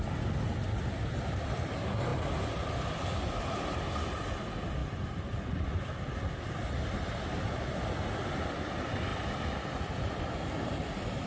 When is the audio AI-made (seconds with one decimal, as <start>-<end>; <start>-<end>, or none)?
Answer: none